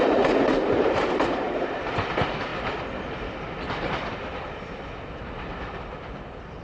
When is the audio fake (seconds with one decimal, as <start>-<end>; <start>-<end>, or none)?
0.5-1.8